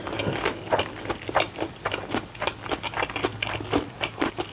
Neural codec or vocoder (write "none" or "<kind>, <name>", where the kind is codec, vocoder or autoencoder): none